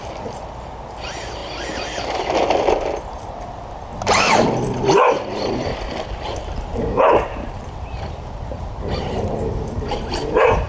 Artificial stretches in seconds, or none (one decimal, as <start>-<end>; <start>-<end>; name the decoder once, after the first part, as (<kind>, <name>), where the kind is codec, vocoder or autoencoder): 6.4-10.7 (vocoder, BigVGAN v2)